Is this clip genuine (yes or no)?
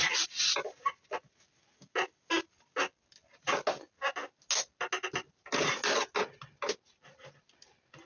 yes